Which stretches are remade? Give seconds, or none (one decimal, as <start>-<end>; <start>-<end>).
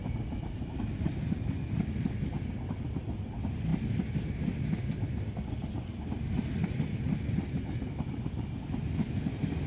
none